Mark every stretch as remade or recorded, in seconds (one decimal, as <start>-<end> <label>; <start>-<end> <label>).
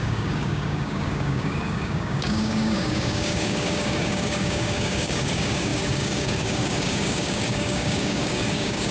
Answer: 0.0-8.9 remade